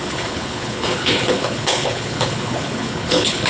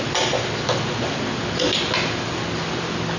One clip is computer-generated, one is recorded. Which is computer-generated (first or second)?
first